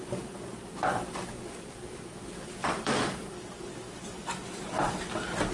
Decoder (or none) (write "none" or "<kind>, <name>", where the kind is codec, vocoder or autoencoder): vocoder, BigVGAN v2